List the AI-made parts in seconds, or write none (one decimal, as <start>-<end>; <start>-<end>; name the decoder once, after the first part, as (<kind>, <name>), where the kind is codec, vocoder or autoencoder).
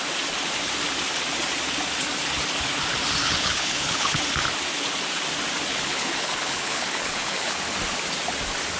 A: 3.2-4.2 (codec, HILCodec); 5.7-7.6